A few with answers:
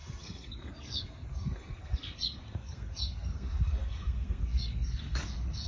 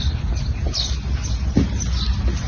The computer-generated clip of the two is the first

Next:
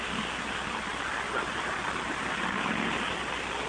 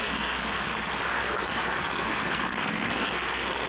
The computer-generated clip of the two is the second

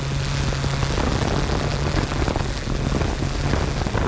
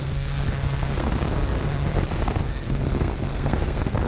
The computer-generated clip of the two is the second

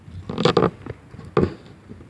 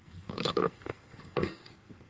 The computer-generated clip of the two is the second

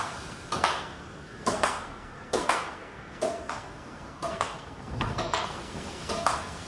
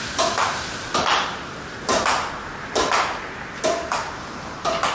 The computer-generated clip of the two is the first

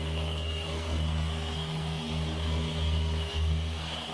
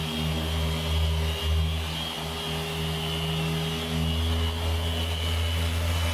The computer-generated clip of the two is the first